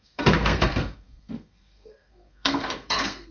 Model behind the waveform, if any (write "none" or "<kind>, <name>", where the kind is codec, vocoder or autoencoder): codec, SNAC